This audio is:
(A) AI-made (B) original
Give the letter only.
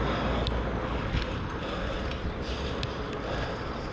B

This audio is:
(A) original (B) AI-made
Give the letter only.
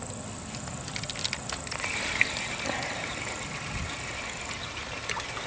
A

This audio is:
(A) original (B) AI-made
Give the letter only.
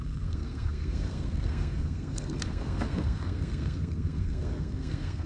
B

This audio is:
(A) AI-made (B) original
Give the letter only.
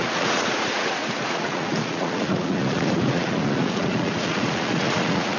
A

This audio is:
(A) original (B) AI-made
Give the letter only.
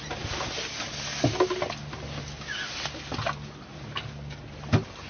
A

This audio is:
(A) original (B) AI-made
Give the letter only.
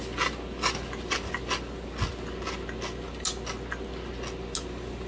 A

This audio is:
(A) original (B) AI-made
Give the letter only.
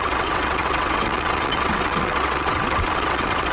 B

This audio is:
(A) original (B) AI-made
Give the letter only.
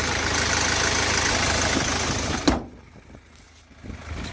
A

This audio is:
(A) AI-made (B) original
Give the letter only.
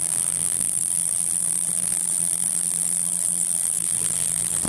A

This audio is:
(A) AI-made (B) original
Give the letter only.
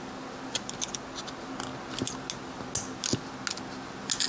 B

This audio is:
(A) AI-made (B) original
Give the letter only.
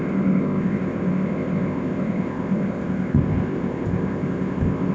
A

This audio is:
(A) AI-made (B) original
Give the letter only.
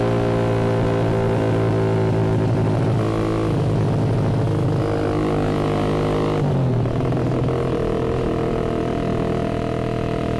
B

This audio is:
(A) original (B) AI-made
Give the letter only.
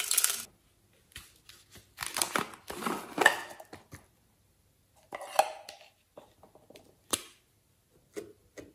A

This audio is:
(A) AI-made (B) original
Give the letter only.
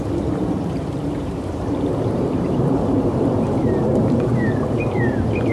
A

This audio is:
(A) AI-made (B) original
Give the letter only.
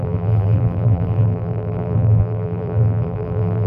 A